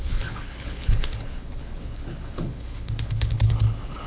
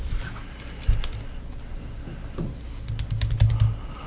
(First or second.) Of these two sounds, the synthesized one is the first